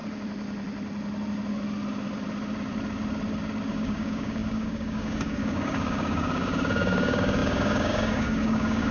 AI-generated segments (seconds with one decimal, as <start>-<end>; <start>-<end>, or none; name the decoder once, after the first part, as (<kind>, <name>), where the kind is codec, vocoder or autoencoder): 3.7-8.9 (codec, DAC)